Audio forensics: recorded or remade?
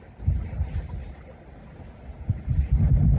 recorded